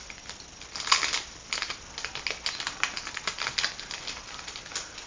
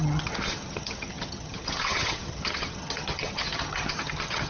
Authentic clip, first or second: first